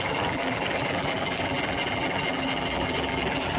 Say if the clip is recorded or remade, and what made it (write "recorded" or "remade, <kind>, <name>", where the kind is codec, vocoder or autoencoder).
remade, vocoder, BigVGAN v2